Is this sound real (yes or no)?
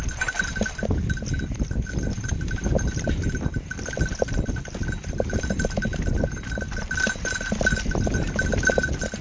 yes